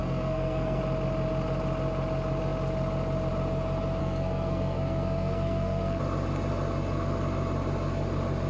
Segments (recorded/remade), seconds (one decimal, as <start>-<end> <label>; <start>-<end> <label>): 0.0-0.8 remade; 0.8-4.0 recorded; 4.0-6.0 remade; 6.0-8.5 recorded